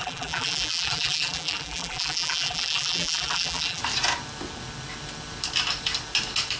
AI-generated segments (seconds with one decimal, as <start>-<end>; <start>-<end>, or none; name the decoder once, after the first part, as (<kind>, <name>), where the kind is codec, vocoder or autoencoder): 0.0-3.8 (vocoder, BigVGAN v2)